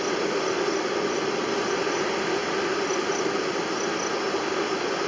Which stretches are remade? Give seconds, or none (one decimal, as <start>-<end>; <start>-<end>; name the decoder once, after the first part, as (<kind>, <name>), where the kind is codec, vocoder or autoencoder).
none